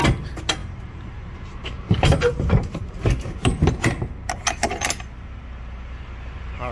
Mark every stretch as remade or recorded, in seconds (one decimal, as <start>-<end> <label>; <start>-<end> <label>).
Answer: 0.0-0.6 recorded; 0.6-3.0 remade; 3.0-6.7 recorded